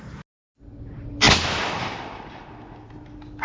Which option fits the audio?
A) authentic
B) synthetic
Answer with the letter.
A